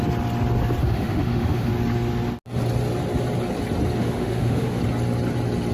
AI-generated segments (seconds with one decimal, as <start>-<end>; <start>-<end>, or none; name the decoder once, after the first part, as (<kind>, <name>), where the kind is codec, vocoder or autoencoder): 0.8-1.7 (autoencoder, DAC-VAE); 4.0-4.8